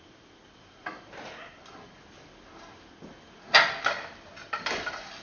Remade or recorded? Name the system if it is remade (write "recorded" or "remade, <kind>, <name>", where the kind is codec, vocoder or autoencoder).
recorded